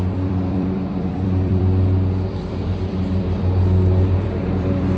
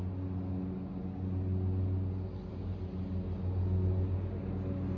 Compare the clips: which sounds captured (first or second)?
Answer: second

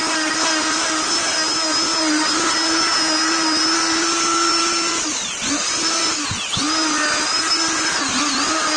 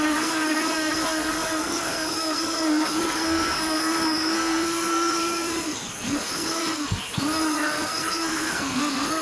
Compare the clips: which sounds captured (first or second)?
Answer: first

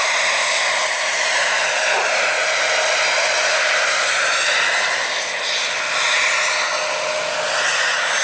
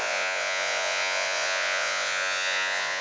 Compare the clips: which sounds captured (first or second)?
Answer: first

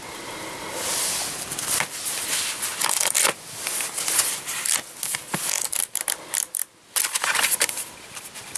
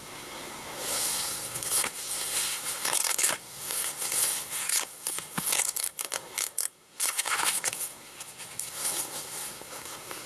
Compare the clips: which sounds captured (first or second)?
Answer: first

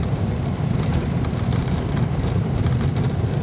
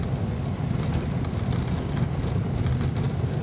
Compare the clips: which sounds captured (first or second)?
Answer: second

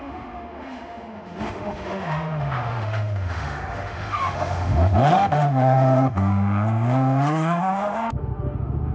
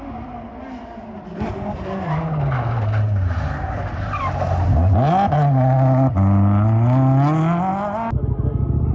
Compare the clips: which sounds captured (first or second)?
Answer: second